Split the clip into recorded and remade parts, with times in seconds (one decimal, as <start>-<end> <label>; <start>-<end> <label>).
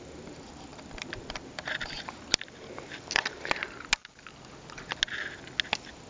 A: 0.0-0.7 recorded; 0.7-3.3 remade; 3.3-6.1 recorded